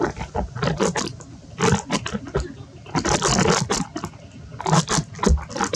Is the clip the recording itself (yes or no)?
yes